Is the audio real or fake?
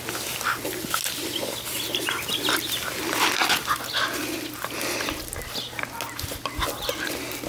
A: real